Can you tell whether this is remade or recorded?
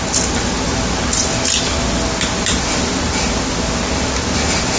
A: recorded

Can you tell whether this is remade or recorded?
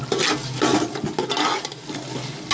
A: recorded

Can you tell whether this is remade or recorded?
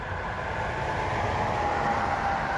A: recorded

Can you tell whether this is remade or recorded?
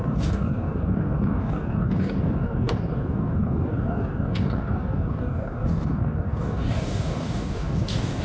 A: remade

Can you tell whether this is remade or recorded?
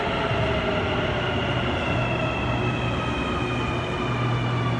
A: recorded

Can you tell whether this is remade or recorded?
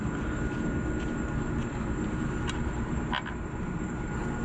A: recorded